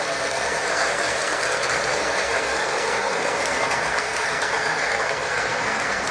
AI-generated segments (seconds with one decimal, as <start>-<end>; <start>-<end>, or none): 0.0-6.1